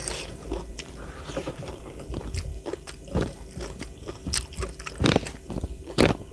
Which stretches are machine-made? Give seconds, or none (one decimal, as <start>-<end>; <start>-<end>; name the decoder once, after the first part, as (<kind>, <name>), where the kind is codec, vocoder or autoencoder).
0.0-2.5 (vocoder, BigVGAN v2); 5.5-6.3